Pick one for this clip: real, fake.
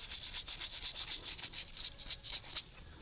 real